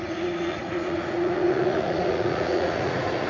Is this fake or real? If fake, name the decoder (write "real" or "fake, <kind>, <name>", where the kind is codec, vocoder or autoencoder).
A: fake, vocoder, Vocos